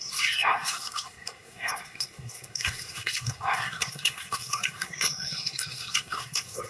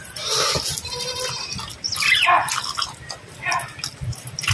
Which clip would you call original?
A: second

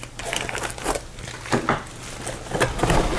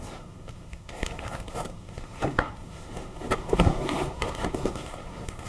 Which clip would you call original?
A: first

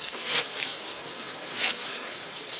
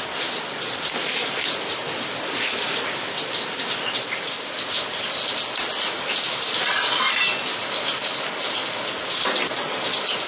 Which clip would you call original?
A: second